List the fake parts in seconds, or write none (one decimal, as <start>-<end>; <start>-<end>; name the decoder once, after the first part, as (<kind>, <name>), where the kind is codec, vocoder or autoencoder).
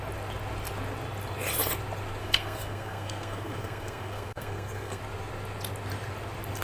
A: 2.2-5.0 (codec, SNAC)